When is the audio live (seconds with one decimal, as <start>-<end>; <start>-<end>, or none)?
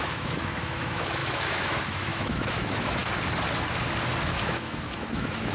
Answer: 3.0-4.2